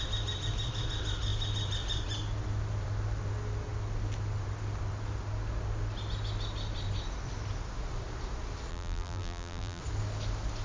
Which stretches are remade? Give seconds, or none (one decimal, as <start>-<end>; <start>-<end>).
8.7-9.8